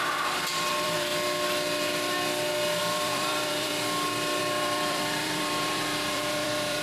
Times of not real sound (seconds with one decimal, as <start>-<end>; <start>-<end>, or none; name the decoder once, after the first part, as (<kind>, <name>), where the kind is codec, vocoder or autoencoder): 0.0-1.1 (vocoder, BigVGAN v2); 2.8-3.7; 4.4-6.8